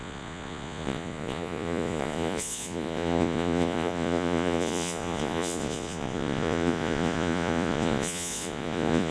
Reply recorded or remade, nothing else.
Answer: remade